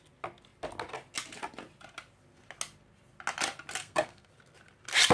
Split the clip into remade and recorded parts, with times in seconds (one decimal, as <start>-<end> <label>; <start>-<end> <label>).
0.0-3.8 recorded; 3.8-4.3 remade; 4.3-5.1 recorded

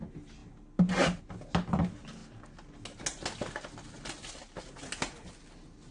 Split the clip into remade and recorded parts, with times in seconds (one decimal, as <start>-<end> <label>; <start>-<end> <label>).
0.0-5.9 recorded

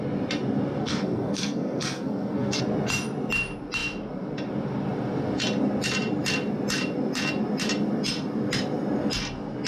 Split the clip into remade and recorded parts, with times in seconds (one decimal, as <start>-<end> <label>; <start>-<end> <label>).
0.0-0.8 recorded; 0.8-2.6 remade; 2.6-9.7 recorded

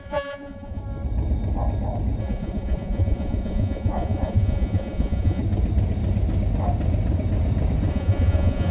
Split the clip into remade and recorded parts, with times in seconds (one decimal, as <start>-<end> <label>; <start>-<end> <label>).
0.0-0.8 remade; 0.8-2.2 recorded; 2.2-5.4 remade; 5.4-7.9 recorded; 7.9-8.7 remade

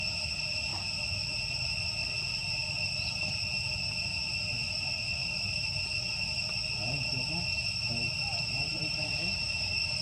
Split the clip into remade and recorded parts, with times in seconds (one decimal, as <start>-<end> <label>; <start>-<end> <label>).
0.0-5.2 recorded; 5.2-5.7 remade; 5.7-8.3 recorded; 8.3-9.1 remade; 9.1-10.0 recorded